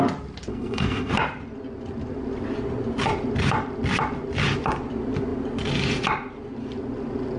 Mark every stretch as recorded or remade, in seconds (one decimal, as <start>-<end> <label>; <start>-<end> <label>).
0.0-0.5 recorded; 0.5-1.1 remade; 1.1-7.4 recorded